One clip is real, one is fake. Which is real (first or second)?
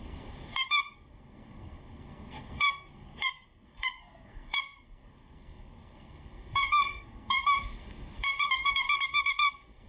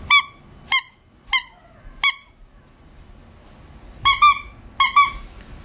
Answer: second